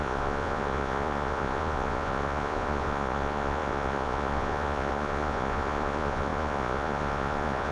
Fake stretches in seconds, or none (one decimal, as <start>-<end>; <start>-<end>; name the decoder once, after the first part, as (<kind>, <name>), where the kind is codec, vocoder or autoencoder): 0.0-7.7 (vocoder, Vocos)